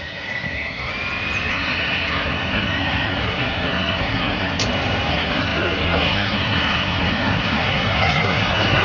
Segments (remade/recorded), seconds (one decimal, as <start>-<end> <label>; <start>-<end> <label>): 0.0-0.9 remade; 0.9-1.5 recorded; 1.5-4.6 remade; 4.6-5.1 recorded; 5.1-8.8 remade